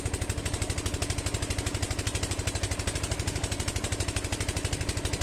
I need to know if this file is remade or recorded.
recorded